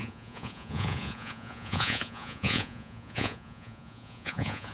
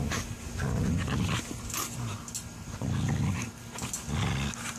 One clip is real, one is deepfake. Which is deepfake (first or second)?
first